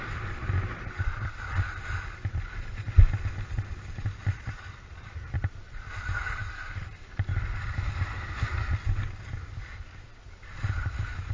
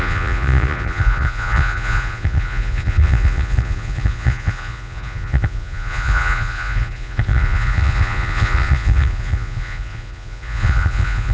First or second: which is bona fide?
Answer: first